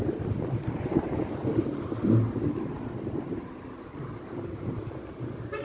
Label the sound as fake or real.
real